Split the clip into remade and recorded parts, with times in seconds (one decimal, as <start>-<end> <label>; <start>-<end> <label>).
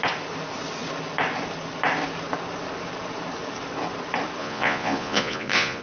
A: 0.0-4.4 recorded; 4.4-5.8 remade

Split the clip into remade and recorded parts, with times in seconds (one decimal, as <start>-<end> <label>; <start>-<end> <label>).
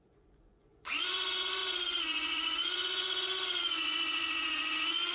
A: 0.0-5.1 remade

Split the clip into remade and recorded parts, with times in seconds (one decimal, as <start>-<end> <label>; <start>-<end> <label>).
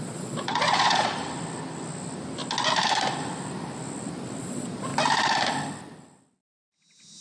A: 0.0-1.2 remade; 1.2-4.4 recorded; 4.4-4.9 remade; 4.9-7.2 recorded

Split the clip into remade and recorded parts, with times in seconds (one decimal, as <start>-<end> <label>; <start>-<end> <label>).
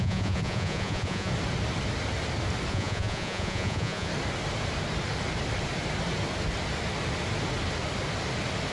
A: 0.0-1.3 remade; 1.3-2.7 recorded; 2.7-4.1 remade; 4.1-8.7 recorded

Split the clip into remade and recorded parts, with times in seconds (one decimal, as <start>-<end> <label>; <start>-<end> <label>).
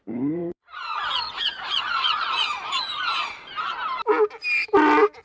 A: 0.0-0.4 recorded; 0.4-3.5 remade; 3.5-5.2 recorded